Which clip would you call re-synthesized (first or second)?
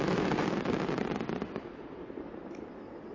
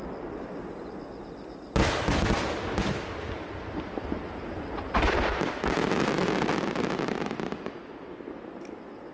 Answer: first